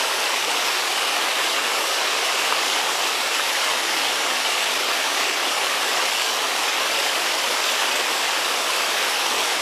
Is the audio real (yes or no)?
no